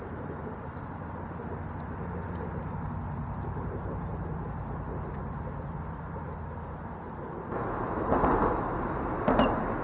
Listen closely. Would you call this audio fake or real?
real